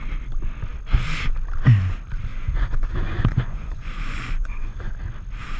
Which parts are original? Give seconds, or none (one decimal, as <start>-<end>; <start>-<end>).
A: 0.0-2.3; 4.9-5.6